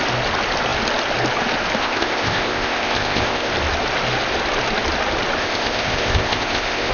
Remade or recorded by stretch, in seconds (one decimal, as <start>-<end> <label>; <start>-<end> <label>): 0.0-1.8 recorded; 1.8-3.5 remade; 3.5-5.4 recorded; 5.4-6.9 remade